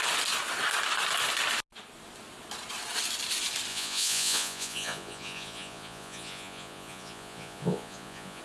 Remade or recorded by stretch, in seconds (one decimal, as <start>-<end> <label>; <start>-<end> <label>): 0.0-3.7 recorded; 3.7-8.4 remade